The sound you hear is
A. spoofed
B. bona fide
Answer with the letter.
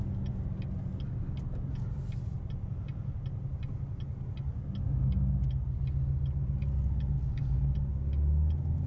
B